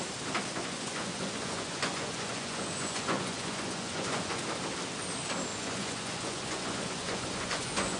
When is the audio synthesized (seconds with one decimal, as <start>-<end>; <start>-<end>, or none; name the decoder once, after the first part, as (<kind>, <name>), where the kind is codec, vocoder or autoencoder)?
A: 0.5-4.4 (vocoder, Vocos); 5.5-8.0